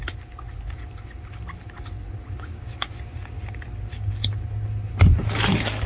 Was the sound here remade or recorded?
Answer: recorded